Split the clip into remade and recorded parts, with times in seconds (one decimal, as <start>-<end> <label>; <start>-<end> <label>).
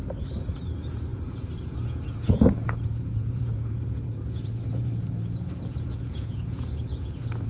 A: 0.0-0.6 recorded; 0.6-7.5 remade